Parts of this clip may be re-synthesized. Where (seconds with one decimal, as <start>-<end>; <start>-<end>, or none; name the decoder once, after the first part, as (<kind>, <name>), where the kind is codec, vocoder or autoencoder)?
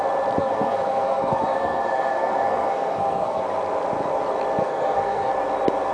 0.4-3.4 (codec, SNAC); 4.6-5.3